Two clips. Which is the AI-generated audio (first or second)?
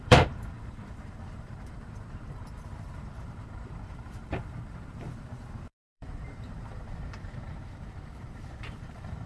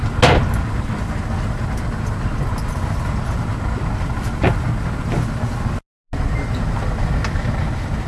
first